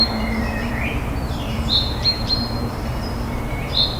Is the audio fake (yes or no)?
yes